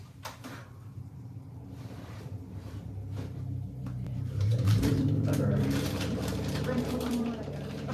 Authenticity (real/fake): fake